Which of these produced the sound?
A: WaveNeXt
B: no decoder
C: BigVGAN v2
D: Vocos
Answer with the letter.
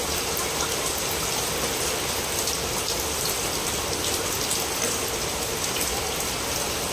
B